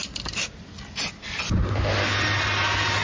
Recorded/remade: recorded